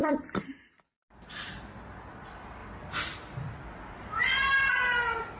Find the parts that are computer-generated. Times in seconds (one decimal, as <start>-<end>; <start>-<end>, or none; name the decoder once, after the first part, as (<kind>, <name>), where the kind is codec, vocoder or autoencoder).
0.0-1.3 (vocoder, BigVGAN v2); 2.6-4.7